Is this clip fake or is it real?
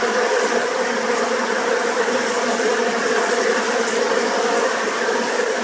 real